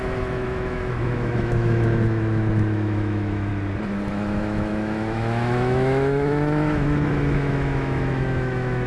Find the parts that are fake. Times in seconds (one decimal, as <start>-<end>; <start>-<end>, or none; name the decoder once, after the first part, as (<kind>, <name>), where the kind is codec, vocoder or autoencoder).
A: 0.0-3.5 (autoencoder, DAC-VAE); 4.1-8.9